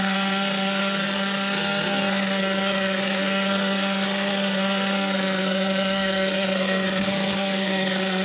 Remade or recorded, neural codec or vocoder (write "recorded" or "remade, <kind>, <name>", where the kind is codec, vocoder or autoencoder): remade, codec, SNAC